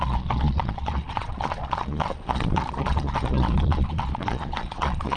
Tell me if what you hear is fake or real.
fake